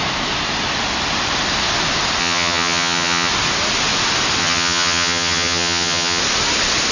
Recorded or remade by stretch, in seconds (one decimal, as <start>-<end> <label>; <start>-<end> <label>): 0.0-2.2 recorded; 2.2-3.3 remade; 3.3-4.4 recorded; 4.4-6.2 remade; 6.2-6.9 recorded